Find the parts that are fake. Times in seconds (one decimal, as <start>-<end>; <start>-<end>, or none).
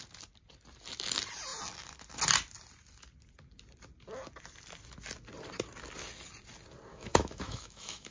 6.9-8.1